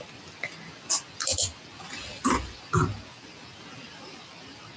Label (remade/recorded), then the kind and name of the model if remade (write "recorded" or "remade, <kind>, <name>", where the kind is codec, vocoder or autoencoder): recorded